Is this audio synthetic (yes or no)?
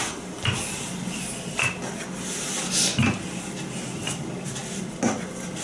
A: no